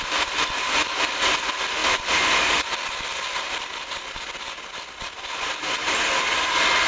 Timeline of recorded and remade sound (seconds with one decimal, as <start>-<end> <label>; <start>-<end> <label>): 0.0-6.9 recorded